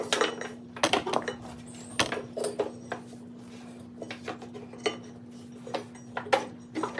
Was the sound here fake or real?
real